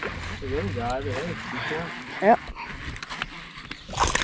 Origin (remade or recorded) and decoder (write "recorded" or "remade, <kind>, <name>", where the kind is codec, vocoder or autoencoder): recorded